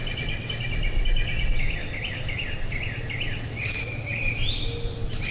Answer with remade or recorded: recorded